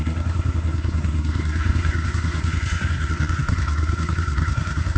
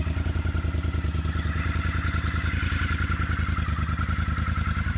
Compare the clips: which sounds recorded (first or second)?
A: second